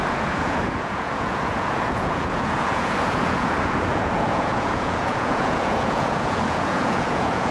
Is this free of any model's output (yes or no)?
no